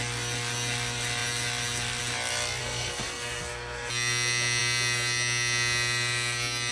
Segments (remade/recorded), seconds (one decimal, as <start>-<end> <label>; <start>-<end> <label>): 0.0-2.6 recorded; 2.6-3.9 remade; 3.9-6.7 recorded